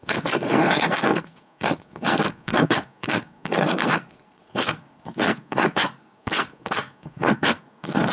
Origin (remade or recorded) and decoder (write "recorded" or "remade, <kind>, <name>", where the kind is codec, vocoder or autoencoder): remade, codec, SNAC